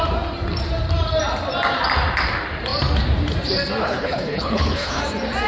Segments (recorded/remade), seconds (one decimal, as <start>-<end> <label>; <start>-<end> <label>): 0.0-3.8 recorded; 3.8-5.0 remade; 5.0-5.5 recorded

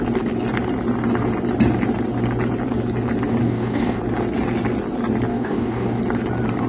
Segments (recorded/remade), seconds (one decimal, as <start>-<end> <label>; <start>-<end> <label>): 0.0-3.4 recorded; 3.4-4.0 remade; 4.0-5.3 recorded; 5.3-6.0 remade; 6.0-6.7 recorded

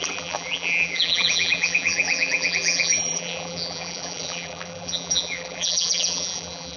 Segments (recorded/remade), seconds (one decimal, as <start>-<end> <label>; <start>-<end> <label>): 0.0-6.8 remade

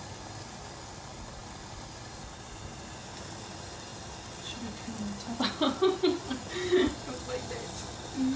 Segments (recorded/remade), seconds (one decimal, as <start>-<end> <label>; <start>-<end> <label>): 0.0-8.4 recorded

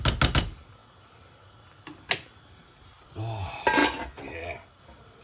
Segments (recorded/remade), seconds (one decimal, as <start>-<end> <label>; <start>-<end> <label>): 0.0-5.2 recorded

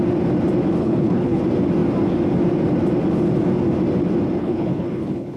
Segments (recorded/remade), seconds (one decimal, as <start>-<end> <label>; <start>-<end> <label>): 0.0-0.8 recorded; 0.8-1.4 remade; 1.4-4.4 recorded; 4.4-5.4 remade

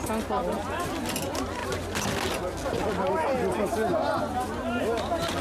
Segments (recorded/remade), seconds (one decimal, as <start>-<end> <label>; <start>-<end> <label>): 0.0-5.4 recorded